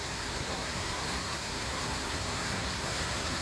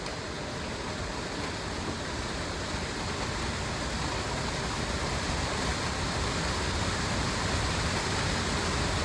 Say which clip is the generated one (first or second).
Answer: first